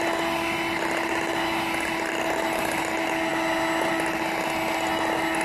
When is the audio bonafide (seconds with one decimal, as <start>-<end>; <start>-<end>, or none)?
0.0-5.4